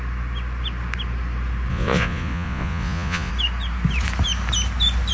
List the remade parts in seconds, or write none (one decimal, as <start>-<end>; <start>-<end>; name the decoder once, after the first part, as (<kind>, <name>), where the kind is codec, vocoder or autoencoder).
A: 1.7-3.3 (vocoder, Vocos)